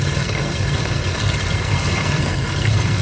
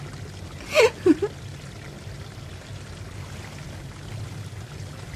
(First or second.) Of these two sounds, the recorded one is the second